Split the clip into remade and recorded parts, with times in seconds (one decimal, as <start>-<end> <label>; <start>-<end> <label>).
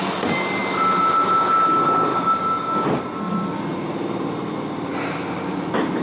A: 0.0-2.1 recorded; 2.1-3.0 remade; 3.0-6.0 recorded